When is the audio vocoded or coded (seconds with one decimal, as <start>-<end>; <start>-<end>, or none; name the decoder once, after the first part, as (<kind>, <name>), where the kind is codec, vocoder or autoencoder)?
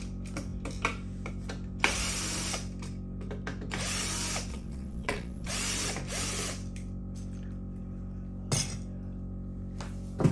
4.5-5.5 (vocoder, Vocos)